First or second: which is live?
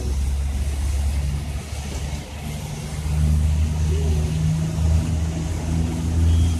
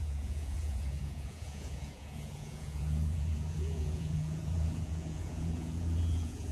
first